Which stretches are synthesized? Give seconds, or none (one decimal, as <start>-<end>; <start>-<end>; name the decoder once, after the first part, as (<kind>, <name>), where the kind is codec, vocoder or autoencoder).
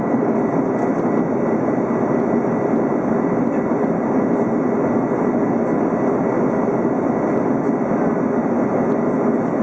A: none